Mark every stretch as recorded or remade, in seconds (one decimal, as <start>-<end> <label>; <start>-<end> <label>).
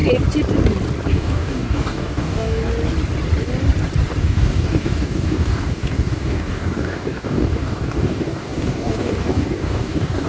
0.0-1.1 recorded; 1.1-2.6 remade; 2.6-4.2 recorded; 4.2-10.3 remade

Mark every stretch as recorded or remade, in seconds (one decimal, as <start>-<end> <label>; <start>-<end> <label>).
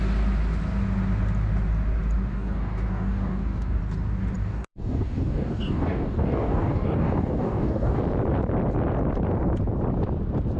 0.0-2.3 recorded; 2.3-3.8 remade; 3.8-4.4 recorded; 4.4-8.0 remade; 8.0-10.6 recorded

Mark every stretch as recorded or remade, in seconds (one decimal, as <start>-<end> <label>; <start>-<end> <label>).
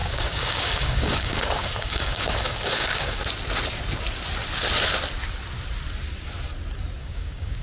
0.0-3.2 remade; 3.2-7.0 recorded; 7.0-7.6 remade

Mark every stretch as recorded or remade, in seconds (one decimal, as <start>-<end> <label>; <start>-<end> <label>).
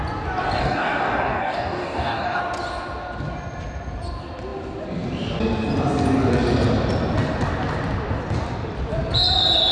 0.0-0.6 recorded; 0.6-2.4 remade; 2.4-9.7 recorded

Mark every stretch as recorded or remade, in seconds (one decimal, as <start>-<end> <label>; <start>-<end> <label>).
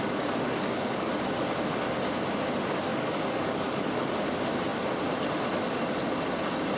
0.0-1.1 remade; 1.1-2.9 recorded; 2.9-4.1 remade; 4.1-6.8 recorded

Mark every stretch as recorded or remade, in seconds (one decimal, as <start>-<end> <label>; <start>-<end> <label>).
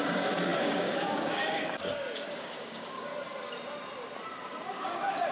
0.0-3.1 remade; 3.1-4.7 recorded; 4.7-5.3 remade